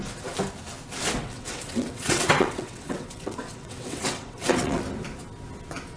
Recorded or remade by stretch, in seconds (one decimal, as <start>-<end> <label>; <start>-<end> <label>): 0.0-1.2 recorded; 1.2-4.8 remade; 4.8-6.0 recorded